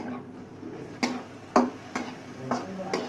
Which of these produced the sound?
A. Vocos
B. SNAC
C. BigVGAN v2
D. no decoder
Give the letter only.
D